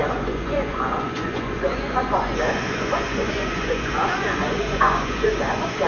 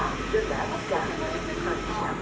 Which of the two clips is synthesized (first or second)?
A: first